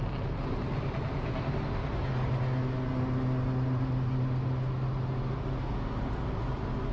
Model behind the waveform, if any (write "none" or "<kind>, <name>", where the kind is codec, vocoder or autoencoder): none